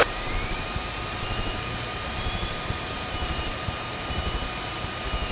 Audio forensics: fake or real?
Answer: fake